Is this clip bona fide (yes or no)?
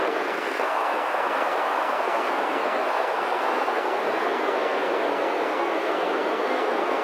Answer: no